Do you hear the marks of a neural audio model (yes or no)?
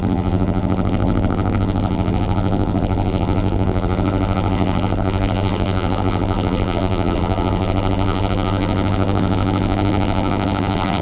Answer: yes